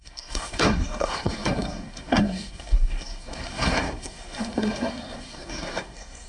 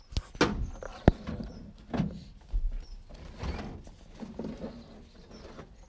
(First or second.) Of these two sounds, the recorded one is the second